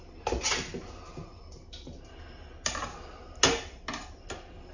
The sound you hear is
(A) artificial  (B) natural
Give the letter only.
B